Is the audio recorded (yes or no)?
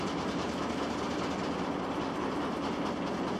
yes